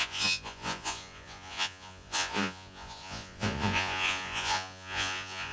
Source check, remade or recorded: remade